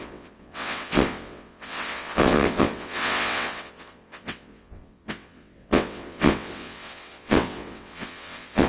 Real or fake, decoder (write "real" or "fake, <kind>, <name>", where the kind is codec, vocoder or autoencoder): fake, vocoder, WaveNeXt